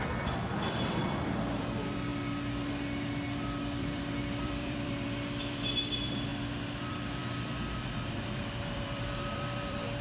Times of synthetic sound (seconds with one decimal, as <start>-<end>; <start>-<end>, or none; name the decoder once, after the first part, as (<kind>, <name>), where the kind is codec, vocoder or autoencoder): 0.0-2.1 (vocoder, BigVGAN v2); 3.8-6.3; 6.8-10.0